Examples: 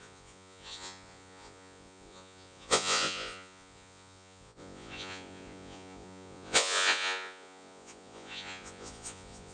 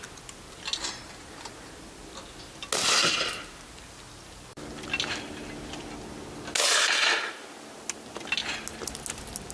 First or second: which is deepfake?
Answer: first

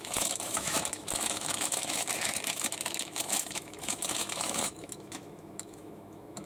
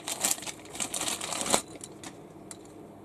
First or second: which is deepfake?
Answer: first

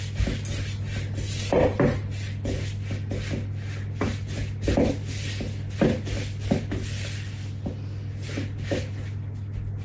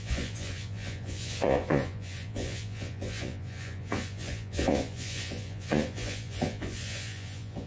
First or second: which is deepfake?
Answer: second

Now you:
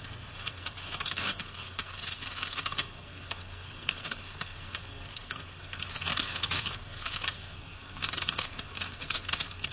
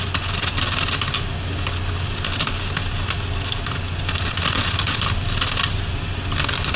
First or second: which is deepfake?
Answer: first